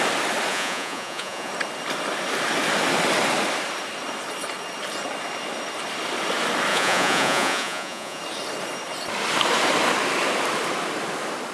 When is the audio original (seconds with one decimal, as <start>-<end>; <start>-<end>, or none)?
0.0-0.5; 1.5-6.7; 8.2-11.5